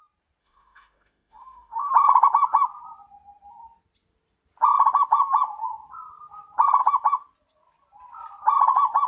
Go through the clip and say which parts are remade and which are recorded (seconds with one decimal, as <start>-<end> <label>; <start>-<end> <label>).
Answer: 0.0-0.4 recorded; 0.4-1.9 remade; 1.9-9.1 recorded